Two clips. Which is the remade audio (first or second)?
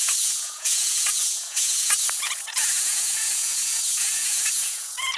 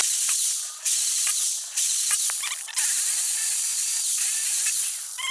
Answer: first